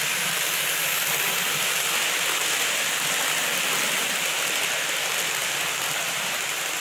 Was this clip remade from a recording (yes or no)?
no